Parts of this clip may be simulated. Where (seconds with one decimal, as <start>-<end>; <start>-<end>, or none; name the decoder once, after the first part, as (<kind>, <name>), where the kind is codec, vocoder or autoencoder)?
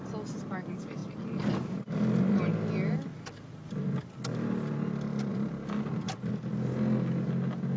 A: 1.0-2.4 (vocoder, BigVGAN v2); 5.3-6.3